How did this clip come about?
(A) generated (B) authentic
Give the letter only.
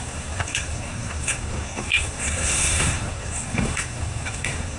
A